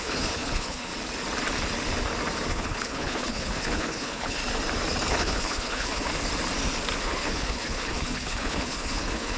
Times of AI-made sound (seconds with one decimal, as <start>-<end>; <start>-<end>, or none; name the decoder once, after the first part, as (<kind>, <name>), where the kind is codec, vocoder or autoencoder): 0.0-0.9 (codec, HILCodec); 2.5-4.4; 5.1-6.1; 7.0-9.4